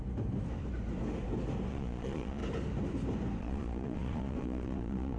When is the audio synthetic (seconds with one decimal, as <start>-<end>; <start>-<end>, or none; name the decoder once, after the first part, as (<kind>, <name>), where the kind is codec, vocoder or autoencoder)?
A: 1.7-2.4 (vocoder, Vocos); 3.4-5.2